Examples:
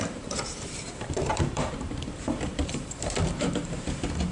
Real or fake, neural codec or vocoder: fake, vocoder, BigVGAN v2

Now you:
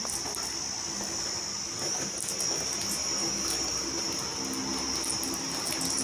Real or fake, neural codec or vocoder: real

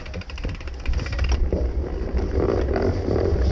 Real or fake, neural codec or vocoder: real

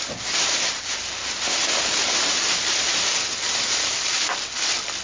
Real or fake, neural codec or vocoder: real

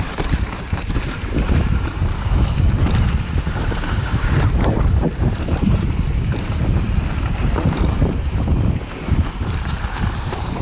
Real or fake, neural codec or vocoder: fake, vocoder, BigVGAN v2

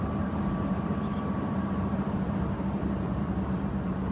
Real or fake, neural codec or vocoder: fake, vocoder, BigVGAN v2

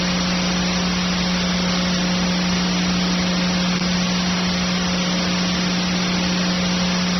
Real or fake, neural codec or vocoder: real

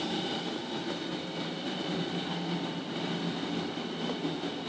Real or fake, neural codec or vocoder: real